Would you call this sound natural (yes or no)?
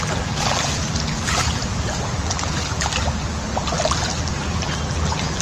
no